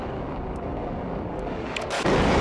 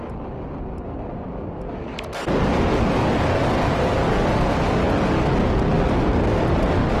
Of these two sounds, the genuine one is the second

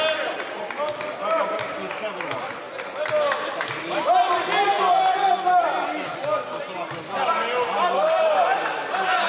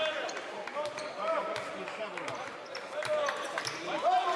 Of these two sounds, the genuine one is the first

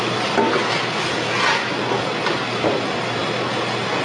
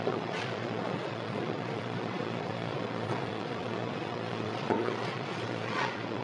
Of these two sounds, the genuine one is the first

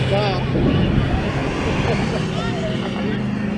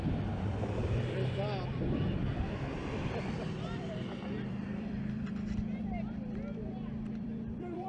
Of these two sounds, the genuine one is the first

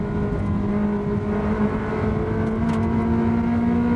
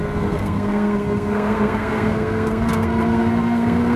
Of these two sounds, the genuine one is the first